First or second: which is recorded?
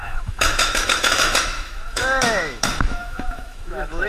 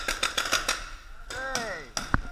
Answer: second